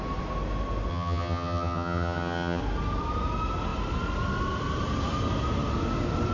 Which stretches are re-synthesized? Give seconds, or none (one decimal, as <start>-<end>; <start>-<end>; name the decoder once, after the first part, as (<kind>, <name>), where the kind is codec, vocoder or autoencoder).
0.9-2.6 (vocoder, HiFi-GAN)